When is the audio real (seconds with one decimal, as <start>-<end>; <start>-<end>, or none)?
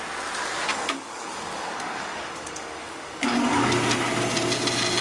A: 0.0-0.7; 3.7-5.0